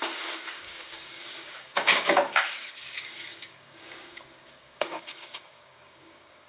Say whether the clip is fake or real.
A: fake